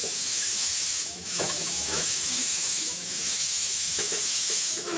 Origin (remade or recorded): remade